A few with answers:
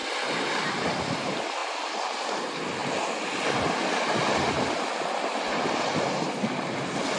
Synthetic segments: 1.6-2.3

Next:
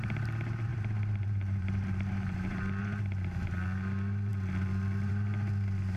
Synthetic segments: 0.7-2.8